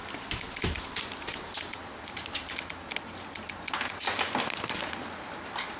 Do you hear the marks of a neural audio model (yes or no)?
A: no